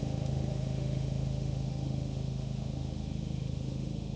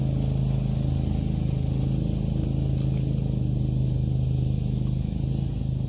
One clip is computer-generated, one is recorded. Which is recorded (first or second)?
second